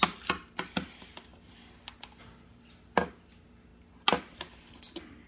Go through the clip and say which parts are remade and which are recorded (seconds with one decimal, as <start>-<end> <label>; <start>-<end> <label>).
0.0-5.3 recorded